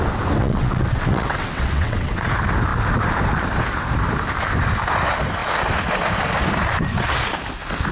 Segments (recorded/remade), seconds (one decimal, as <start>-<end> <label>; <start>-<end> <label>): 0.0-0.4 recorded; 0.4-2.2 remade; 2.2-7.9 recorded